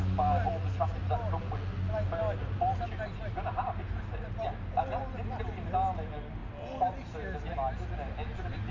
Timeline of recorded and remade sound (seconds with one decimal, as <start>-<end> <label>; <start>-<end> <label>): 0.0-8.7 recorded